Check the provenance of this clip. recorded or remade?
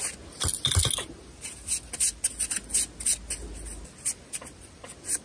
recorded